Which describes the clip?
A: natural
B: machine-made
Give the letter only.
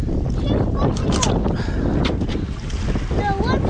A